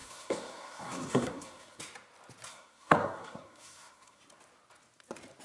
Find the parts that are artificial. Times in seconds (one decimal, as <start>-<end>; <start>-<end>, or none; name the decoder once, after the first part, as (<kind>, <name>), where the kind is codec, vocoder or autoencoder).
0.0-1.8 (codec, SNAC); 2.5-4.2